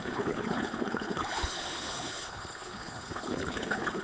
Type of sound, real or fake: fake